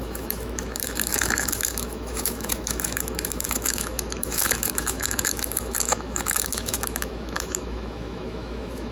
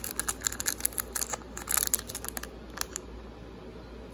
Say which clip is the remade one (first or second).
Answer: first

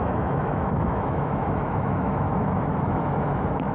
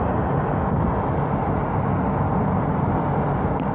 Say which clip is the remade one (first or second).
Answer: first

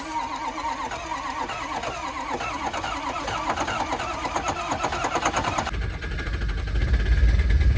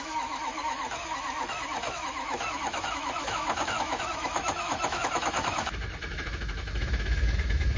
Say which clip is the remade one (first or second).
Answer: second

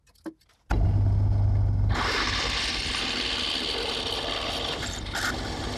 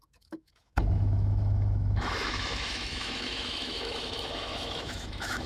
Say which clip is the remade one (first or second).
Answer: second